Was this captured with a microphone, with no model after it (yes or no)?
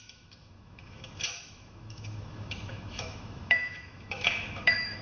no